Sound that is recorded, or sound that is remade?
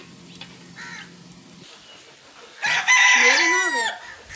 recorded